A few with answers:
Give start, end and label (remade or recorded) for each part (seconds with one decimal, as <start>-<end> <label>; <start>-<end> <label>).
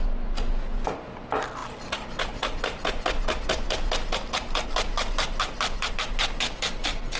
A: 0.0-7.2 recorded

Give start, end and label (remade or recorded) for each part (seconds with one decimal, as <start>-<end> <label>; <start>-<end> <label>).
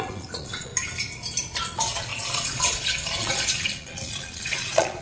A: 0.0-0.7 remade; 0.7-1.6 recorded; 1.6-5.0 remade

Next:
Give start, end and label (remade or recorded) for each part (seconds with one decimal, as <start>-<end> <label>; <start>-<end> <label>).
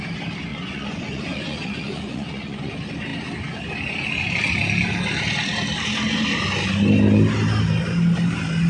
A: 0.0-0.5 recorded; 0.5-2.7 remade; 2.7-8.7 recorded